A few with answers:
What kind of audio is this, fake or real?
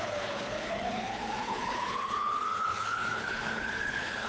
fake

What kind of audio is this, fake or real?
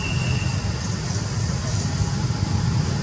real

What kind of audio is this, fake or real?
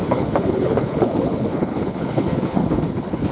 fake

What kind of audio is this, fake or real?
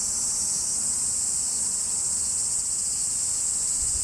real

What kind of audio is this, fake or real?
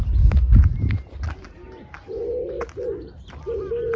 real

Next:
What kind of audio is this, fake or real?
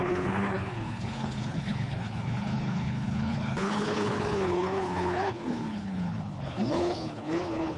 fake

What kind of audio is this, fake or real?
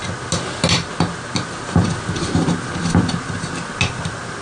real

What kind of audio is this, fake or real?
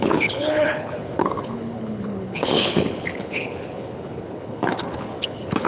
fake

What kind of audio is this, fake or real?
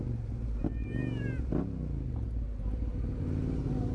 real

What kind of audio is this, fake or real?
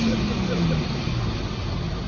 real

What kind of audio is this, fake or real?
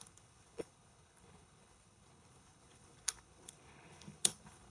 fake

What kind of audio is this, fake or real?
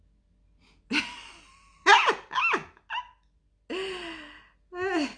real